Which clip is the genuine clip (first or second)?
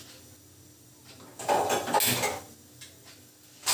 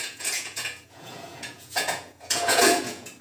first